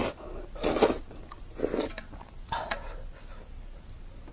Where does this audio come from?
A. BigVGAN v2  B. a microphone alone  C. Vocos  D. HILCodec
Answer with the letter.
B